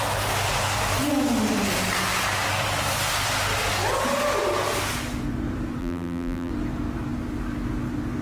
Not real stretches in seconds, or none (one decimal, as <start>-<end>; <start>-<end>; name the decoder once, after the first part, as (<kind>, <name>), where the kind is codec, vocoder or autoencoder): 5.8-6.5 (vocoder, BigVGAN v2)

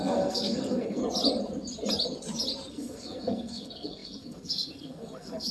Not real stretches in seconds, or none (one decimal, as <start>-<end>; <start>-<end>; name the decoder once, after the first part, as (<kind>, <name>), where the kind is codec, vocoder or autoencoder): 0.0-1.0 (codec, SNAC); 2.7-5.5

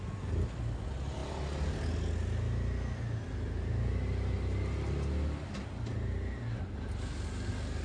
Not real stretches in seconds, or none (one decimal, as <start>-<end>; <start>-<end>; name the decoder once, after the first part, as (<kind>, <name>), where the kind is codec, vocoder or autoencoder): none

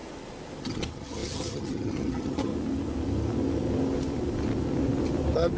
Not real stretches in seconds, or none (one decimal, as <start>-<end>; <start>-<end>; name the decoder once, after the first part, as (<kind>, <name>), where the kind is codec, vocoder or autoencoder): 0.6-2.5 (vocoder, HiFi-GAN)

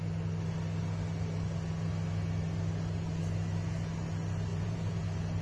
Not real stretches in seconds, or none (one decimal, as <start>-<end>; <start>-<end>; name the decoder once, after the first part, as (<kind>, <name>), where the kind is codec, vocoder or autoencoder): 4.5-5.0 (vocoder, Vocos)

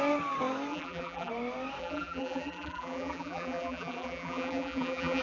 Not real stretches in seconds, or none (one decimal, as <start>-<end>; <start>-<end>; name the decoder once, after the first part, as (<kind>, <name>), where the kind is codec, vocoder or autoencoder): 0.7-1.3 (vocoder, BigVGAN v2); 1.8-5.2